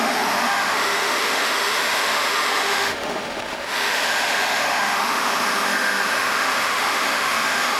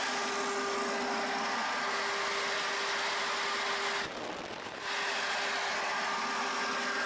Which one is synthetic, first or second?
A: first